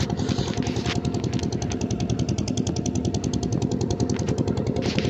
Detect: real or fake real